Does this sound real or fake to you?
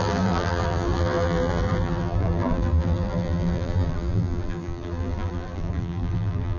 fake